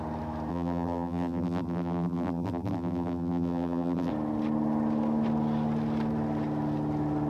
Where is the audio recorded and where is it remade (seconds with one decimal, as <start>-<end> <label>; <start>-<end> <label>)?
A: 0.0-0.5 recorded; 0.5-4.1 remade; 4.1-7.3 recorded